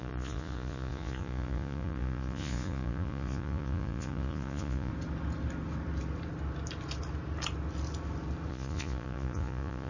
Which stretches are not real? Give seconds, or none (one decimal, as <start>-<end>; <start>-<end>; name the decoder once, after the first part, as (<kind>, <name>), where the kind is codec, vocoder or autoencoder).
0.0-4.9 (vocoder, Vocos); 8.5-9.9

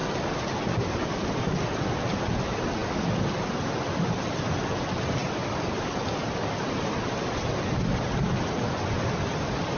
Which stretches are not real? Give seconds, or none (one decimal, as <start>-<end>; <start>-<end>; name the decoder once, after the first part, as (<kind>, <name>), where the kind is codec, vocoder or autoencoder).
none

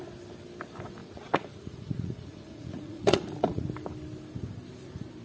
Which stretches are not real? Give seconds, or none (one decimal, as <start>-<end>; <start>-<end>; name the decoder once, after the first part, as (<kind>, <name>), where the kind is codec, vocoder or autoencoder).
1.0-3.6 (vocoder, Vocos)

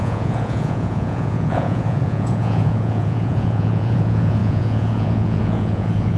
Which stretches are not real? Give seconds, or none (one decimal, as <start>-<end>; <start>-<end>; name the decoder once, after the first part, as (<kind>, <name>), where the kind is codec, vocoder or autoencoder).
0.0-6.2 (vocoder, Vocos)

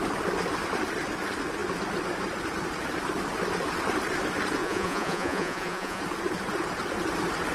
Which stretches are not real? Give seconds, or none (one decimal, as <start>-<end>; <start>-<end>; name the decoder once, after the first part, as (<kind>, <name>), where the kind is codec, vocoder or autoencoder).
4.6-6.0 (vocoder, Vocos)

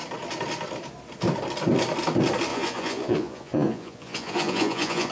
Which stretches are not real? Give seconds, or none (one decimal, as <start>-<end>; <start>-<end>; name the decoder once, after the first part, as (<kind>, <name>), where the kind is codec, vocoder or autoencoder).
2.5-5.1 (vocoder, Vocos)

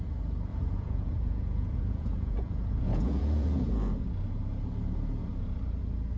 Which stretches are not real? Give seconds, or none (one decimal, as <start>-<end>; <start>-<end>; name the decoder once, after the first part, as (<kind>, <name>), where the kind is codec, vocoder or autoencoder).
0.5-3.7 (vocoder, Vocos)

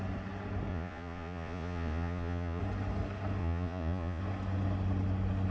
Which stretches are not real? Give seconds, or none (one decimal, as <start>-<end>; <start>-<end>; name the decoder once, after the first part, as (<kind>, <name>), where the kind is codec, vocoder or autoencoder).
0.7-2.6 (vocoder, Vocos); 3.4-4.2